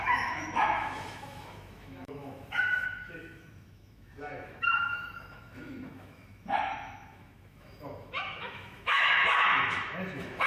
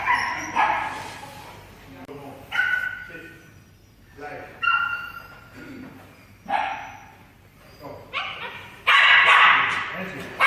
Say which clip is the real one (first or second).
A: second